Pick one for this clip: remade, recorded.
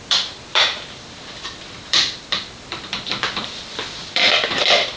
remade